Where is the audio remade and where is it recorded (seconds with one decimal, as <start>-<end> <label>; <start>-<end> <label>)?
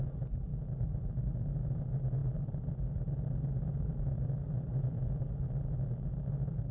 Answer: 0.0-0.5 recorded; 0.5-1.1 remade; 1.1-2.2 recorded; 2.2-6.2 remade; 6.2-6.7 recorded